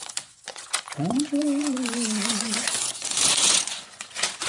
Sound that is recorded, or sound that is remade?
remade